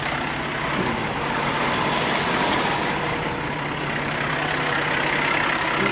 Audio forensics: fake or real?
real